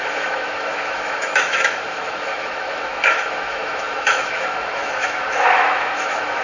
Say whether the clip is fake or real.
fake